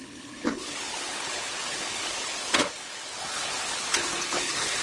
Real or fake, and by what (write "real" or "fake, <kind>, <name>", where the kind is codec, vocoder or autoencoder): fake, codec, HILCodec